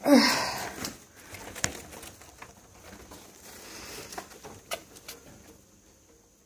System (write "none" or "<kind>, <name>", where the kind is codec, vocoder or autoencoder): none